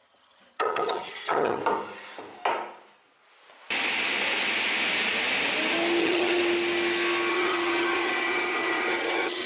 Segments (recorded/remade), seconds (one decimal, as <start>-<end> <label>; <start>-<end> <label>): 0.0-1.6 remade; 1.6-6.0 recorded; 6.0-6.4 remade; 6.4-7.3 recorded; 7.3-9.5 remade